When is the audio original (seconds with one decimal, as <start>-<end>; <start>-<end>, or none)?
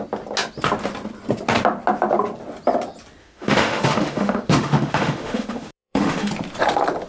0.0-3.2; 6.3-7.1